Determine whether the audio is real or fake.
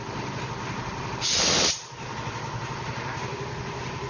real